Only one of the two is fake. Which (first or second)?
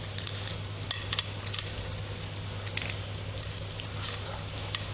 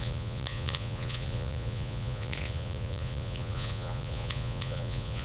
second